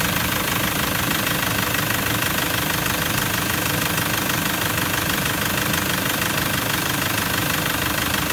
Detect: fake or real fake